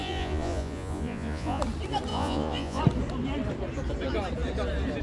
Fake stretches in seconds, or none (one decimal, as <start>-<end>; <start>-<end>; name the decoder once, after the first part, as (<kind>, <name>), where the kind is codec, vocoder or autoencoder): 0.0-1.6 (vocoder, Vocos); 2.1-2.8